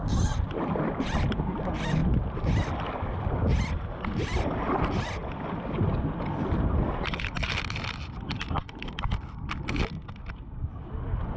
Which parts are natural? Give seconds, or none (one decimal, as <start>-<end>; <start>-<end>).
2.0-3.7; 5.2-10.2